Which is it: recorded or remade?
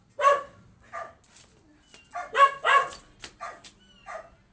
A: recorded